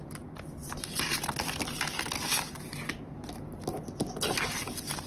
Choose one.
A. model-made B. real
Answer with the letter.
B